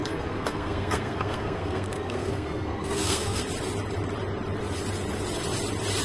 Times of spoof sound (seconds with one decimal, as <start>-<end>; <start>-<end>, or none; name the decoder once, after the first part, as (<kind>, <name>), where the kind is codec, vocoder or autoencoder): 0.0-3.4 (codec, SNAC)